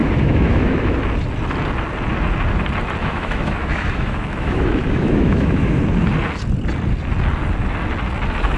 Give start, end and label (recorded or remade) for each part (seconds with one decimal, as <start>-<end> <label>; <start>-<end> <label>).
0.0-1.0 remade; 1.0-3.0 recorded; 3.0-5.8 remade; 5.8-8.6 recorded